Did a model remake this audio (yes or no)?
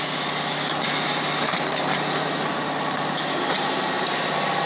no